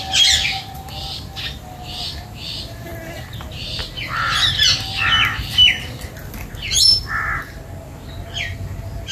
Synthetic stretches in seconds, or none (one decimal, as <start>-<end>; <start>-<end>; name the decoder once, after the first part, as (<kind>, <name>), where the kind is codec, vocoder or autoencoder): none